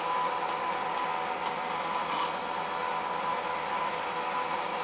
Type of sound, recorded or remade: recorded